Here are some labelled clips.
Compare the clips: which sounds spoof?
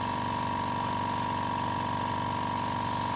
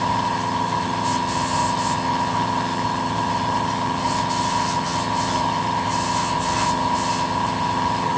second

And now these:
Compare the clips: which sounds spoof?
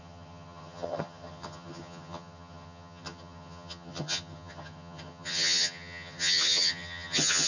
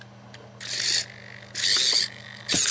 first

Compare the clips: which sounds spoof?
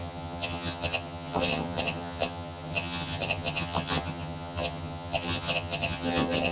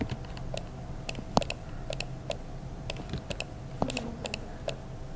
first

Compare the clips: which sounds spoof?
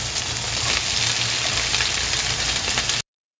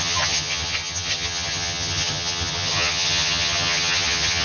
second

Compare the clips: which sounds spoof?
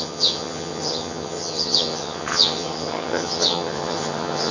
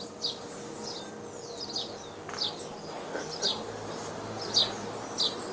first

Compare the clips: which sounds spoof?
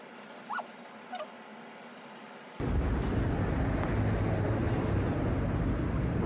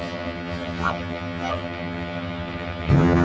second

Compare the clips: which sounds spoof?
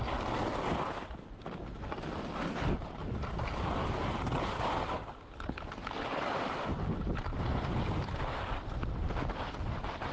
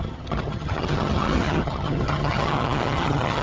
second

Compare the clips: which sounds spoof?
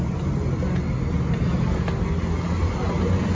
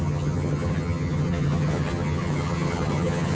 second